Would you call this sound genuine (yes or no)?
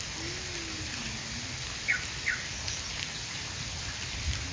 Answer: yes